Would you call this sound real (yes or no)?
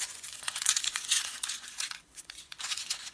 no